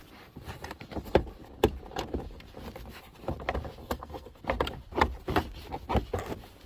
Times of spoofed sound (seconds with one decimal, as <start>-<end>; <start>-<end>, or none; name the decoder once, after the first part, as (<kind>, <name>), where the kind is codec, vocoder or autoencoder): 3.8-4.4 (codec, SNAC)